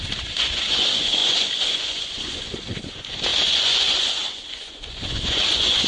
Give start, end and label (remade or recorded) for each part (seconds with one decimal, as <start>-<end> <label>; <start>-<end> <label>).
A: 0.0-5.9 remade